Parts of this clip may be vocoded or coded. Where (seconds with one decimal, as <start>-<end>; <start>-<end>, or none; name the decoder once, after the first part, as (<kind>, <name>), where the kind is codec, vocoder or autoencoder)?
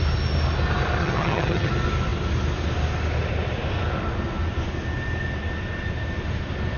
1.0-1.7 (vocoder, HiFi-GAN)